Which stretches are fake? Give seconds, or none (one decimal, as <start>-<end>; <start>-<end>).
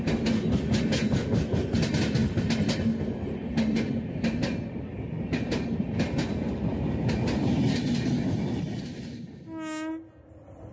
none